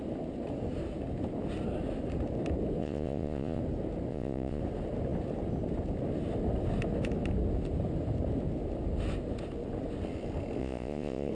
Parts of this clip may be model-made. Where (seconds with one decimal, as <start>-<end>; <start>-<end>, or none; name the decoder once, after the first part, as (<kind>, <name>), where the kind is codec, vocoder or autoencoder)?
2.8-3.6 (vocoder, Vocos); 4.1-4.6; 10.6-11.3